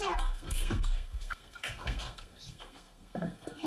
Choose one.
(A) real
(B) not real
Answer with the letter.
B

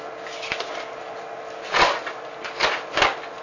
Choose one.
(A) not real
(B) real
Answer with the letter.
B